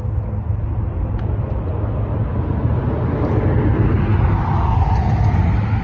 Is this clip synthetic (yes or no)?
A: no